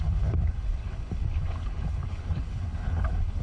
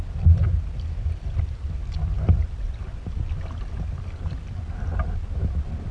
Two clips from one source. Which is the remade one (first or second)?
first